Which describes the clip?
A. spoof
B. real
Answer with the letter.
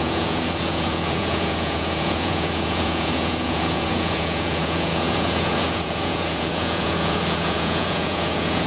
A